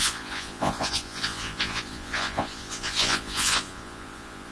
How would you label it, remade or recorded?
remade